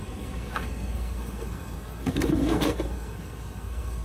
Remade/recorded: remade